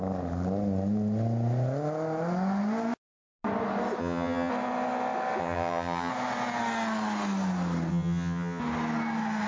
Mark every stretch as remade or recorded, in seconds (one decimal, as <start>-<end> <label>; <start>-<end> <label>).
0.0-4.0 recorded; 4.0-4.5 remade; 4.5-5.4 recorded; 5.4-6.1 remade; 6.1-7.9 recorded; 7.9-8.6 remade; 8.6-9.5 recorded